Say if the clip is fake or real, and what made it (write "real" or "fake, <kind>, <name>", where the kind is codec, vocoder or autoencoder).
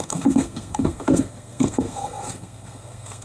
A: fake, codec, SNAC